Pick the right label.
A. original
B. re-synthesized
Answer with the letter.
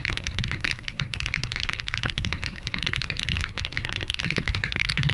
B